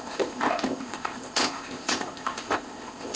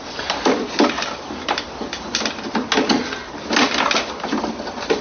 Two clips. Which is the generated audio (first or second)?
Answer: first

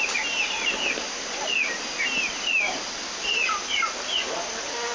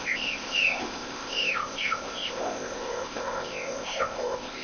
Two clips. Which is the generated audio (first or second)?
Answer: second